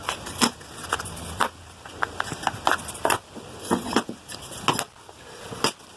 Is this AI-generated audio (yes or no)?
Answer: no